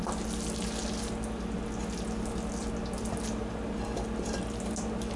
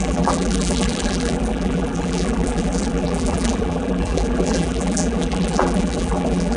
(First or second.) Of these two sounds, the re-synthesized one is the second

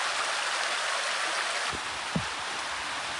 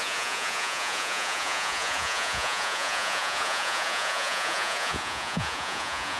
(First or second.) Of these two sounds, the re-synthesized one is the second